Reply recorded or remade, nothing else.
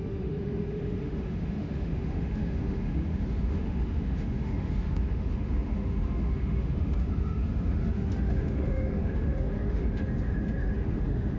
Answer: remade